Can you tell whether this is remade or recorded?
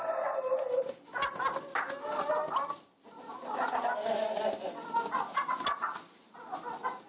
recorded